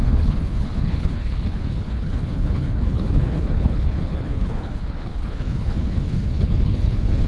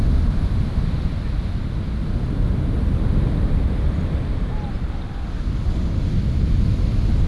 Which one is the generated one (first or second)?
first